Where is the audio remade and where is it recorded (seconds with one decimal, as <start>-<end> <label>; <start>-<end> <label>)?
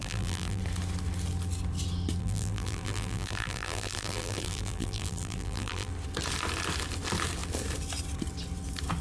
0.0-0.6 remade; 0.6-2.2 recorded; 2.2-5.9 remade; 5.9-9.0 recorded